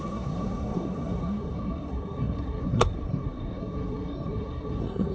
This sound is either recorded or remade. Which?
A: remade